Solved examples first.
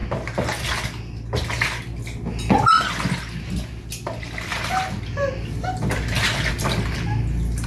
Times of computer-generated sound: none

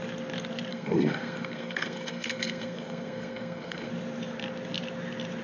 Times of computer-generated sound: 0.7-3.9 (codec, SNAC)